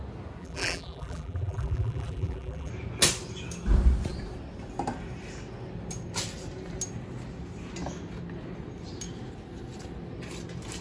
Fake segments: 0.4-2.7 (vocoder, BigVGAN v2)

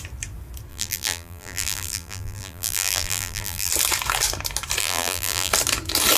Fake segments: 0.7-3.7 (vocoder, BigVGAN v2); 4.8-5.5